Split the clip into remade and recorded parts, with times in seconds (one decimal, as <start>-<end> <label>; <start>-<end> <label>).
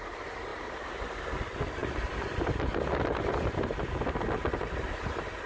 0.0-5.5 recorded